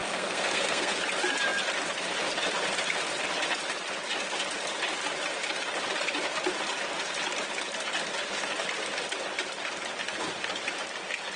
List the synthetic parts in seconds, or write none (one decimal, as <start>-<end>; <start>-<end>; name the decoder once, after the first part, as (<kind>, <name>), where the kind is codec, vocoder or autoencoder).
0.0-1.0 (codec, SNAC)

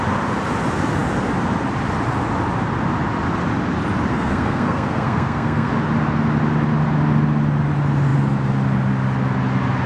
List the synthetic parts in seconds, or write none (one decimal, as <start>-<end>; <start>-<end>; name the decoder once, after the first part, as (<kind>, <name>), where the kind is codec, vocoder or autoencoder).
4.1-5.7 (codec, SNAC)

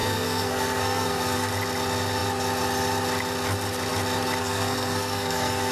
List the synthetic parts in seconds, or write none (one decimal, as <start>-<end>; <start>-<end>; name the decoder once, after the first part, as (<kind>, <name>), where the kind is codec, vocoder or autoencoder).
0.0-1.5 (codec, SNAC); 4.4-5.7

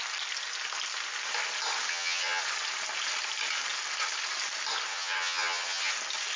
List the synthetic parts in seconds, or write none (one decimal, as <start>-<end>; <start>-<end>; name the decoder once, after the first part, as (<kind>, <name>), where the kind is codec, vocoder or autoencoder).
1.9-2.4 (vocoder, HiFi-GAN); 4.9-5.9

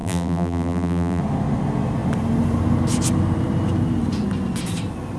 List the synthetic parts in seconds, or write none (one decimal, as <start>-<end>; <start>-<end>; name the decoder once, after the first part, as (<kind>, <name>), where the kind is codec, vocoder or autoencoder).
0.0-1.2 (vocoder, BigVGAN v2)

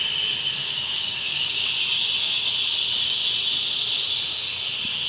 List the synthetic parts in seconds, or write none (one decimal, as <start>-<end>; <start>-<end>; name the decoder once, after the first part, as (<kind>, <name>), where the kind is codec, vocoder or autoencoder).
0.6-1.7 (codec, DAC)